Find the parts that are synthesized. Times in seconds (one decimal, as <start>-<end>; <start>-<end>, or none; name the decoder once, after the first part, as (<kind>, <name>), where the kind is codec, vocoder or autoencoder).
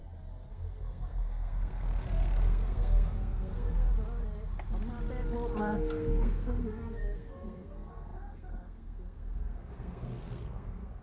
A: 0.5-3.9 (codec, SNAC); 5.6-11.0